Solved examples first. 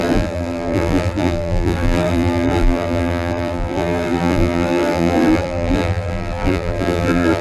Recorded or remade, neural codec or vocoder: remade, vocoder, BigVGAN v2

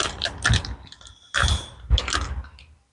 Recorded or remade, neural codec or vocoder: recorded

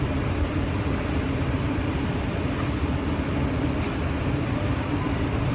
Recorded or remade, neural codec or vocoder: recorded